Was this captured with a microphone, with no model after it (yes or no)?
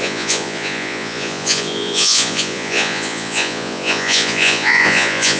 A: no